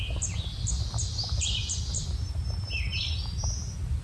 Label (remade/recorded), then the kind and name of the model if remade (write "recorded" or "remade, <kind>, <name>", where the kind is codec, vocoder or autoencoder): recorded